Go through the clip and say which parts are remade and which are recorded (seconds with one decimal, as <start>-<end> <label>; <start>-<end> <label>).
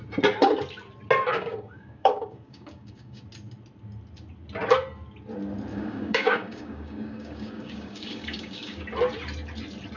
0.0-1.3 recorded; 1.3-3.2 remade; 3.2-5.7 recorded; 5.7-8.8 remade; 8.8-10.0 recorded